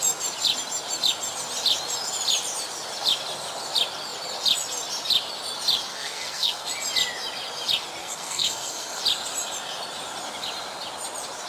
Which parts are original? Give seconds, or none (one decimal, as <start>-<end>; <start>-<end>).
0.0-5.9; 6.7-8.0; 9.0-11.5